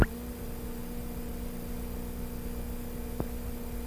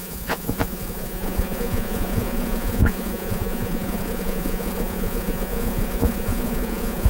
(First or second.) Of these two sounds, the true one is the first